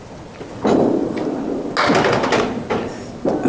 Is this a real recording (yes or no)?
yes